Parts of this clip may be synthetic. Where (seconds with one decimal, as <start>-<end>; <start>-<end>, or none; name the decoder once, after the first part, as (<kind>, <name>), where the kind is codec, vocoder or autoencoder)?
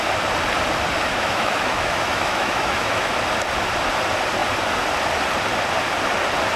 1.1-3.1 (autoencoder, DAC-VAE)